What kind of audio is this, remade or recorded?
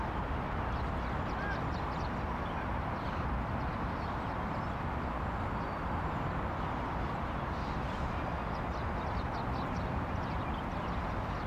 recorded